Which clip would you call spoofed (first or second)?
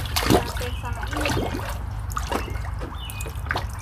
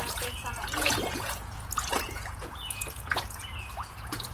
second